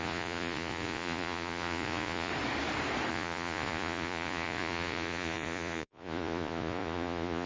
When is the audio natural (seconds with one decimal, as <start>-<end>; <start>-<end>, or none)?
2.3-3.1